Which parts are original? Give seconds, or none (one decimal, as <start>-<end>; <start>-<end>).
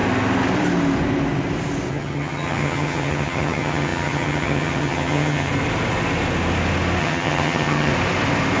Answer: 0.0-1.9; 5.5-7.0; 7.9-8.6